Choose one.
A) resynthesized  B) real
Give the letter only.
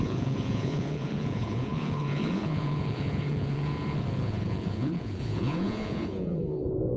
A